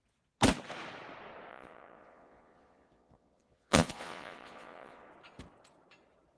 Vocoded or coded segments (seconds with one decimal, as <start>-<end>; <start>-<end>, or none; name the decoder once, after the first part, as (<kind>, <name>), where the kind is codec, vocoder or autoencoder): 1.5-5.1 (vocoder, Vocos)